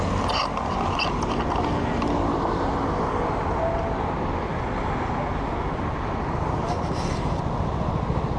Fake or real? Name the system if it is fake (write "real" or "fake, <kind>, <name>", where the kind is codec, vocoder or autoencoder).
real